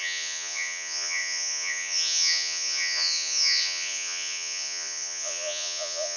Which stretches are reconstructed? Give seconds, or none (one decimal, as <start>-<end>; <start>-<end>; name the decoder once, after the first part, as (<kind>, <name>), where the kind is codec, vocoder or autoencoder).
0.0-6.2 (vocoder, Vocos)